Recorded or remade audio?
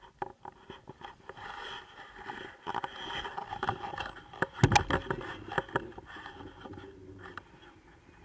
recorded